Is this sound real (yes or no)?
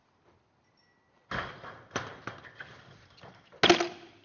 yes